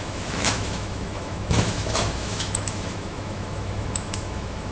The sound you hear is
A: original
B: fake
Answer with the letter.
B